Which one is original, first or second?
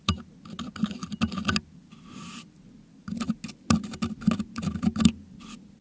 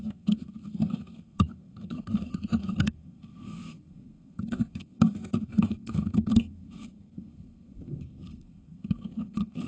first